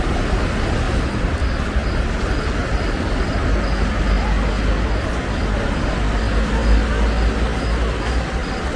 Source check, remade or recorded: recorded